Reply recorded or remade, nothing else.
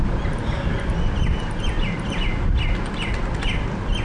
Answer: recorded